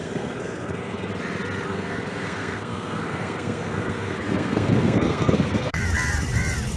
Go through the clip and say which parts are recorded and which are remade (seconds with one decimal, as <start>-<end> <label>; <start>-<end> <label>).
0.0-1.1 remade; 1.1-1.7 recorded; 1.7-5.8 remade; 5.8-6.8 recorded